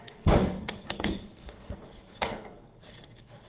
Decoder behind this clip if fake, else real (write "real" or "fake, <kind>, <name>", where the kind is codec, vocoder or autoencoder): fake, codec, SNAC